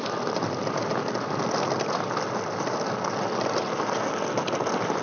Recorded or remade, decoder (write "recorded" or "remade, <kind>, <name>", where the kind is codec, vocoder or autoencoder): recorded